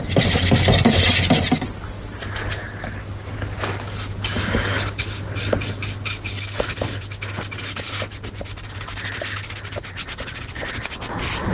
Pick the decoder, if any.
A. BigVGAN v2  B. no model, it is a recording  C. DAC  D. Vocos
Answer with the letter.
B